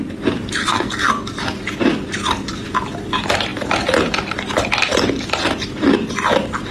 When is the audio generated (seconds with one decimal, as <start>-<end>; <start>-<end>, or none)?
0.6-1.1